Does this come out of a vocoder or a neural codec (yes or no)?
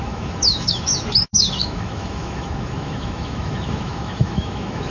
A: yes